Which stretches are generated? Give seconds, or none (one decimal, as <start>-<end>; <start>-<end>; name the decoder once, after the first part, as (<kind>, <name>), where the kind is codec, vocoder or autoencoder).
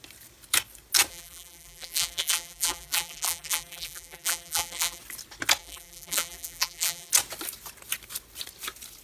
1.1-5.0 (vocoder, BigVGAN v2); 5.6-7.1